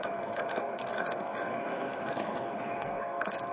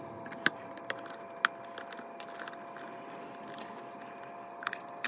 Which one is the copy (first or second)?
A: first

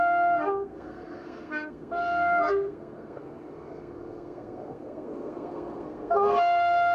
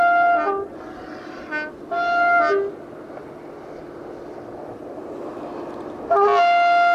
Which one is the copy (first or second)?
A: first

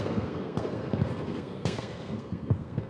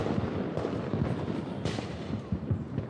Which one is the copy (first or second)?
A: first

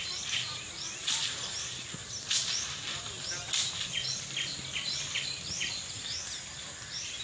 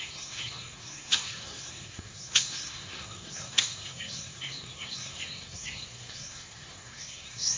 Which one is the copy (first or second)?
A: second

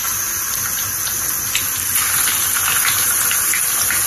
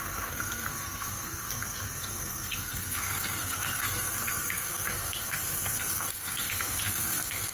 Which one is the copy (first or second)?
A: second